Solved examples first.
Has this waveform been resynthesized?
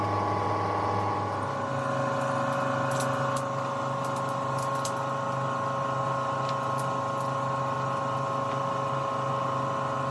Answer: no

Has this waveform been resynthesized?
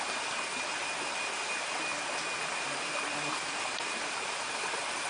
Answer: no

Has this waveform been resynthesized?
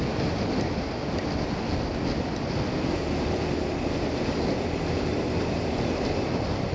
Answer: no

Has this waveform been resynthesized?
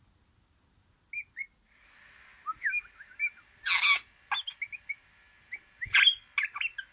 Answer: no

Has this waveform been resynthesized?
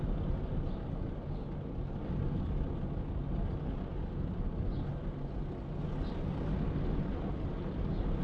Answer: no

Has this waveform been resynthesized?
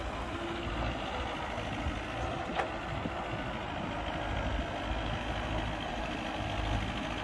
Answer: no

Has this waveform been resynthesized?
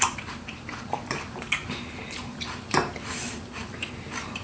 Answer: yes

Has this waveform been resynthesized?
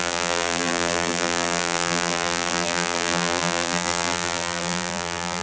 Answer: yes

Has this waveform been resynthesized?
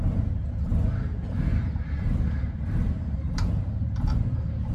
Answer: yes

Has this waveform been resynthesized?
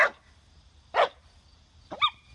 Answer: no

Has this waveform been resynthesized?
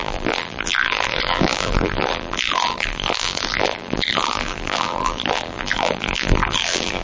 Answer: yes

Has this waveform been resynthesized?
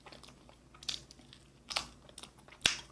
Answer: no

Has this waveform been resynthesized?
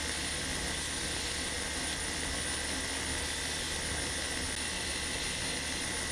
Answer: no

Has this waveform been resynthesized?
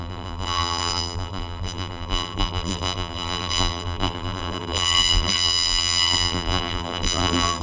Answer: yes